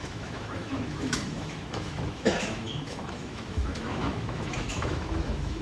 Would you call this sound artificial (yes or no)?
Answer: yes